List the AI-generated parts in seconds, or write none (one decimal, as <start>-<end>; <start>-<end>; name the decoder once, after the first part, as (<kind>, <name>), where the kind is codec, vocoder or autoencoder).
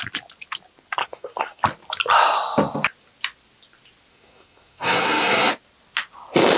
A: 1.0-1.6 (codec, SNAC); 4.1-5.5